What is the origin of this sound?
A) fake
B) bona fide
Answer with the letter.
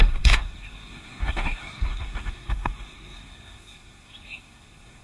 A